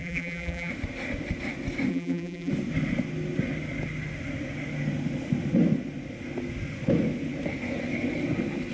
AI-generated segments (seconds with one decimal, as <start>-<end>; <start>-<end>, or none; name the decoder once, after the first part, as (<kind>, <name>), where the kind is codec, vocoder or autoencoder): 0.0-0.7 (vocoder, BigVGAN v2); 1.9-2.5